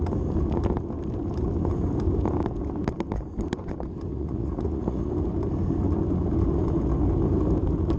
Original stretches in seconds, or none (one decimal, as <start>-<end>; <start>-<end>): 0.0-4.1; 5.1-8.0